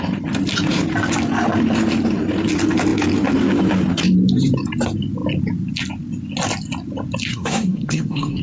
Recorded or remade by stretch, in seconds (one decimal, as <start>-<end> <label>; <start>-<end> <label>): 0.0-7.3 recorded; 7.3-8.4 remade